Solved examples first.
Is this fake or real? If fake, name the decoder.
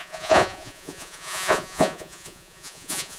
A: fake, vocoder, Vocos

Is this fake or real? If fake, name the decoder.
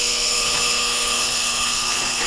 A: fake, codec, HILCodec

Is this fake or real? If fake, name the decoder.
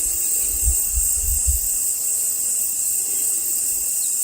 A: real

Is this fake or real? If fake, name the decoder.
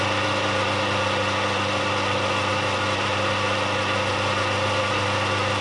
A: real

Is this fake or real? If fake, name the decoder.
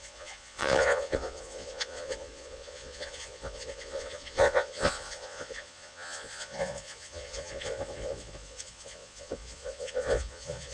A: fake, vocoder, Vocos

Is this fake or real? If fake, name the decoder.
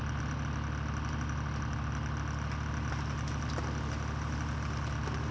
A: real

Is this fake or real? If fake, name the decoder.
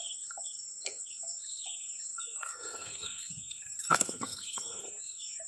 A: fake, codec, SNAC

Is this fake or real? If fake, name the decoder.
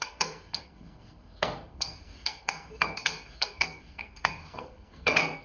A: fake, codec, SNAC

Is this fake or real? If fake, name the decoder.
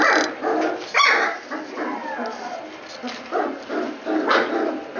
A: real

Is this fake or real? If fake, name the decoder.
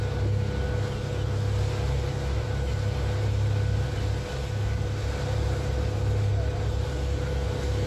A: real